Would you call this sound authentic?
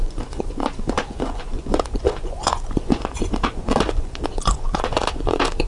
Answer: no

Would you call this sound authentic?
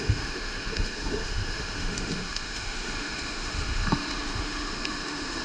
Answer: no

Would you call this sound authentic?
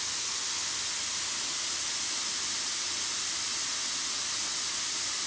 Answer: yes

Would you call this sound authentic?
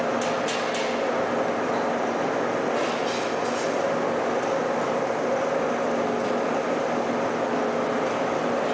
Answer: yes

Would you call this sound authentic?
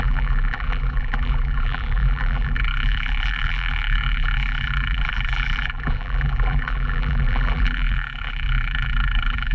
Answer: no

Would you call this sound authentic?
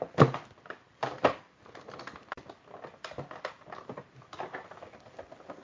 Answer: yes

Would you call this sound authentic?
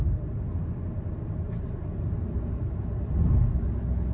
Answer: yes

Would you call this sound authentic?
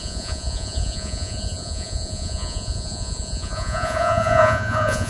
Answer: no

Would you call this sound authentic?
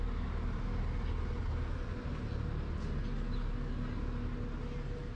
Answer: yes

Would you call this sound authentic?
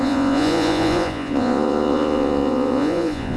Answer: no